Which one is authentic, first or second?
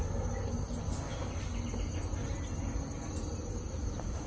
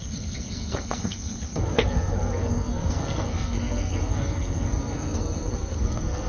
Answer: first